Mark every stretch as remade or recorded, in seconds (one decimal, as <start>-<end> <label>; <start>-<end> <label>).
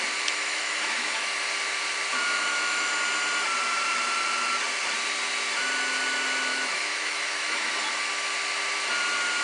0.0-0.4 recorded; 0.4-1.4 remade; 1.4-2.1 recorded; 2.1-2.9 remade; 2.9-6.5 recorded; 6.5-7.7 remade; 7.7-9.4 recorded